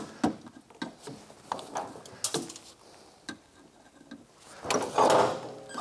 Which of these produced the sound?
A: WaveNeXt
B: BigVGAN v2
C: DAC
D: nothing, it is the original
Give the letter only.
D